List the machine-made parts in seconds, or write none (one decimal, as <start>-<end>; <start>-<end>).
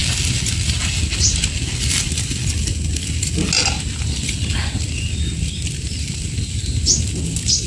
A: none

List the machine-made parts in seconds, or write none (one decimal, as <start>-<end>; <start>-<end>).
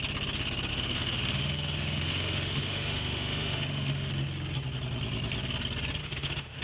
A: 0.7-4.1; 6.0-6.6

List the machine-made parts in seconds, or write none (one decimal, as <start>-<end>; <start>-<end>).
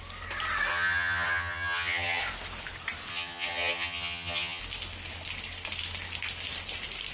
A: 0.7-2.2; 3.1-4.6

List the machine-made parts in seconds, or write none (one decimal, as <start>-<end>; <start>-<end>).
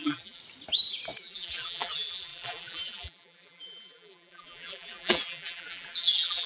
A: 0.0-0.4; 1.2-6.5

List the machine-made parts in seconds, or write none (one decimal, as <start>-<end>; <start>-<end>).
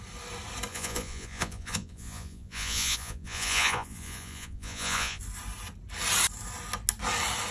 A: 0.7-5.2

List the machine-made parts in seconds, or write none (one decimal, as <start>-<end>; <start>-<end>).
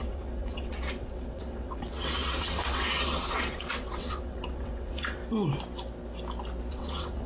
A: 0.0-5.2; 6.7-7.3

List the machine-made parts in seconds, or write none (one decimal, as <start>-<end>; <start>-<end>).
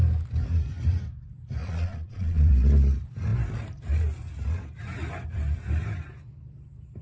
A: 1.6-2.5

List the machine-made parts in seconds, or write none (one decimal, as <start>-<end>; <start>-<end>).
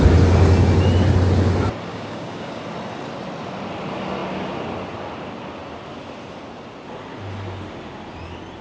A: 1.9-2.6